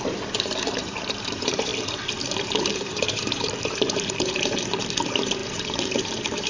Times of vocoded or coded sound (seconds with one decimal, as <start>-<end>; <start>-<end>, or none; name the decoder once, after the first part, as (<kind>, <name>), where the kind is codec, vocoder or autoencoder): 0.0-1.7 (vocoder, BigVGAN v2); 2.4-6.5